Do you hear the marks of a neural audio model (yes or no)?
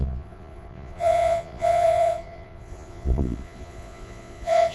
yes